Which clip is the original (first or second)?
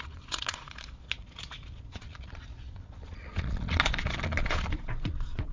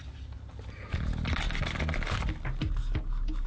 second